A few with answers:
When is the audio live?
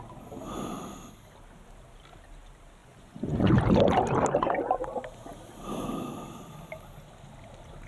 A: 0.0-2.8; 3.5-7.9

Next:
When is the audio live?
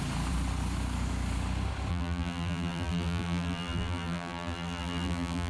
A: 0.0-1.9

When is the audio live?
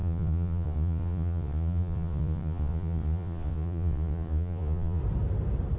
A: 5.0-5.8